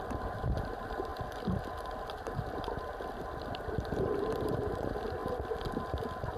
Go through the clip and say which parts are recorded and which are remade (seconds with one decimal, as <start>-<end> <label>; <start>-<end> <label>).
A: 0.0-1.1 remade; 1.1-3.9 recorded; 3.9-5.2 remade; 5.2-6.4 recorded

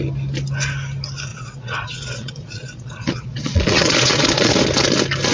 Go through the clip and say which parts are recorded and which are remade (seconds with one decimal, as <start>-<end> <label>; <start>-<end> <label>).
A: 0.0-1.3 recorded; 1.3-4.5 remade; 4.5-5.3 recorded

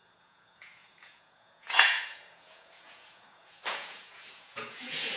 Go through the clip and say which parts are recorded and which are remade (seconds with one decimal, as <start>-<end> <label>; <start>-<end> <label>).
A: 0.0-5.2 remade

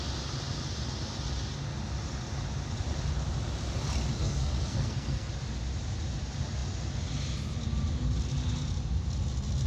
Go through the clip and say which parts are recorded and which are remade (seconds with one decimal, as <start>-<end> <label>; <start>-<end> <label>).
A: 0.0-4.1 recorded; 4.1-5.3 remade; 5.3-9.7 recorded

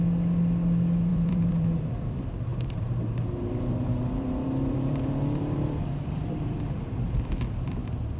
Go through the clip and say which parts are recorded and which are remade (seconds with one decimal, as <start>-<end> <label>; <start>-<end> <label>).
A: 0.0-1.1 recorded; 1.1-1.8 remade; 1.8-2.5 recorded; 2.5-6.9 remade; 6.9-8.2 recorded

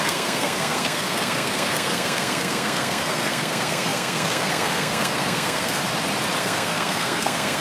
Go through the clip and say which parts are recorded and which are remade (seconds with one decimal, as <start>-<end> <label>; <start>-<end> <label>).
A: 0.0-5.8 remade; 5.8-6.4 recorded; 6.4-7.6 remade